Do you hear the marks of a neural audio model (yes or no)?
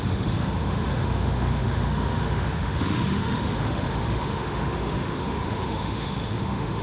yes